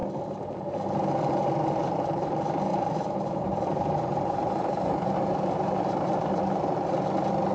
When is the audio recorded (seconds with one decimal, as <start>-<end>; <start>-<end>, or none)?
0.0-2.7; 6.4-7.5